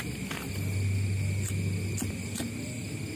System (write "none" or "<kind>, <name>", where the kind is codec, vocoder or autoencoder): none